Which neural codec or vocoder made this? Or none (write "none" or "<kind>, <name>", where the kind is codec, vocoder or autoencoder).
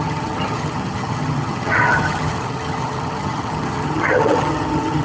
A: vocoder, HiFi-GAN